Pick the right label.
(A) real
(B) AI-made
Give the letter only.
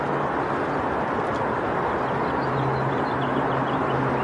A